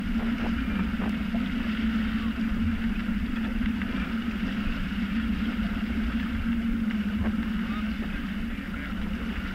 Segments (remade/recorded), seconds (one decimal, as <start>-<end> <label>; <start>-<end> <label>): 0.0-3.0 recorded; 3.0-6.3 remade; 6.3-9.5 recorded

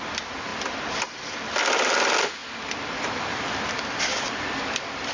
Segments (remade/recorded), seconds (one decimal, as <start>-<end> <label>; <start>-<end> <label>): 0.0-2.4 recorded; 2.4-5.1 remade

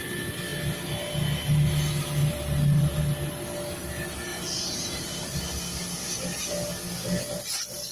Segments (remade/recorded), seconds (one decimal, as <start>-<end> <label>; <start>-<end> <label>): 0.0-2.2 recorded; 2.2-3.0 remade; 3.0-4.3 recorded; 4.3-5.4 remade; 5.4-7.9 recorded

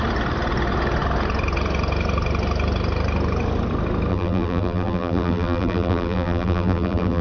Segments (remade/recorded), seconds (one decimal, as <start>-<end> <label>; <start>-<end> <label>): 0.0-4.1 recorded; 4.1-7.2 remade

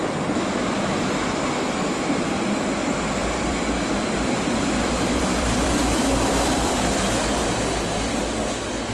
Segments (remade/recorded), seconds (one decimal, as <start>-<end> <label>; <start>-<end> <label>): 0.0-3.2 recorded; 3.2-7.4 remade; 7.4-8.9 recorded

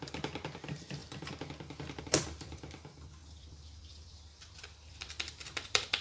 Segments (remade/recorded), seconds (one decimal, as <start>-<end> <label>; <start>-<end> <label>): 0.0-6.0 remade